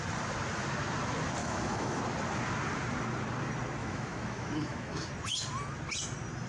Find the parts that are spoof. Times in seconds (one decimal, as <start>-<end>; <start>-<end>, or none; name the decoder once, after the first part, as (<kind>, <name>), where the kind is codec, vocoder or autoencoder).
1.4-2.0 (autoencoder, DAC-VAE); 3.8-5.1